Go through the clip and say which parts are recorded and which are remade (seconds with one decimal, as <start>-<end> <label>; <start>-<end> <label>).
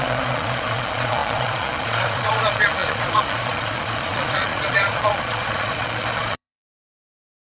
0.0-7.5 remade